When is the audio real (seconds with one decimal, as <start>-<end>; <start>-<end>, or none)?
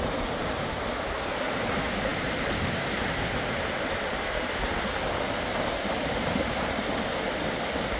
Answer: 0.0-8.0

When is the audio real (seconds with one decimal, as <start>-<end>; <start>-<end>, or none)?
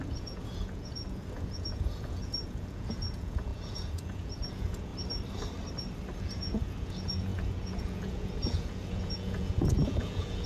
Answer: 4.9-6.2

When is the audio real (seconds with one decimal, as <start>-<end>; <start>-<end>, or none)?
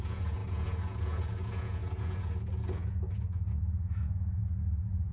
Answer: 4.4-5.1